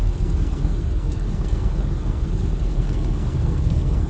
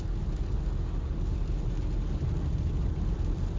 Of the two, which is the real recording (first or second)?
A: second